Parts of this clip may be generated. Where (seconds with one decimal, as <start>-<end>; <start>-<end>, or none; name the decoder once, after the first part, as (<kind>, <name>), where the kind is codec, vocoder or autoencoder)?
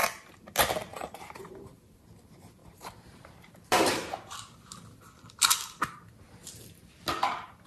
0.0-0.5 (vocoder, BigVGAN v2); 0.9-2.0; 2.6-5.0